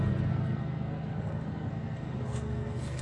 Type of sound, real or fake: fake